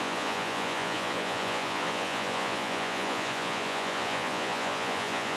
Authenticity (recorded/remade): remade